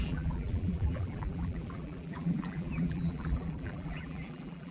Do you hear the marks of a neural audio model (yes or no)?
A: yes